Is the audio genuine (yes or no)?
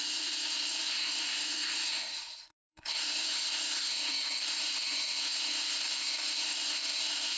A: no